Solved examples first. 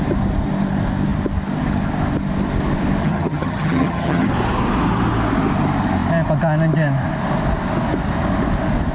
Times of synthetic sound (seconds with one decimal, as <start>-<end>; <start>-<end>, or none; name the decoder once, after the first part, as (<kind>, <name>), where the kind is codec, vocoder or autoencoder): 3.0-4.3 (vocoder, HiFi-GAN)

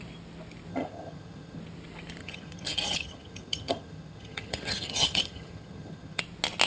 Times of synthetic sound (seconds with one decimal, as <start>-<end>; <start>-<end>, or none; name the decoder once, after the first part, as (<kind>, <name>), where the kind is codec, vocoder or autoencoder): 0.7-1.6 (vocoder, HiFi-GAN); 2.2-6.2

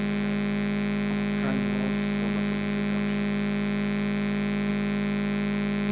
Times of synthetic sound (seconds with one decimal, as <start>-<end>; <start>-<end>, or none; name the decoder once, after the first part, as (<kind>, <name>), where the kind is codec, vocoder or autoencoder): none

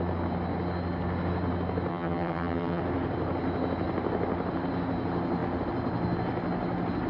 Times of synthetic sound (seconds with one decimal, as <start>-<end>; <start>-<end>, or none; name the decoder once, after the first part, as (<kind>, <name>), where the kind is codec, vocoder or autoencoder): 1.9-2.8 (vocoder, HiFi-GAN)

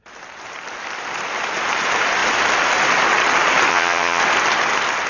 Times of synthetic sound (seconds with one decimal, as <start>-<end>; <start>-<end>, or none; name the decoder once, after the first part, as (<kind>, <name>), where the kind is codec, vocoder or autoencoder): 3.7-4.2 (vocoder, HiFi-GAN)

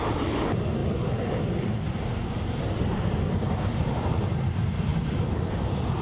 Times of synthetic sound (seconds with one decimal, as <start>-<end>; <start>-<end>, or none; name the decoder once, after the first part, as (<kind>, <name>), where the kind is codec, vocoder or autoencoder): none